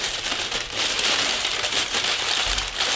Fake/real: fake